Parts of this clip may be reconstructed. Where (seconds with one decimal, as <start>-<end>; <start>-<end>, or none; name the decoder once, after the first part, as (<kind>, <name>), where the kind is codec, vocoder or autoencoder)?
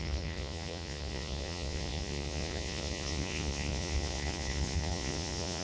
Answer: 0.0-5.6 (vocoder, Vocos)